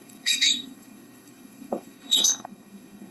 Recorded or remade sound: remade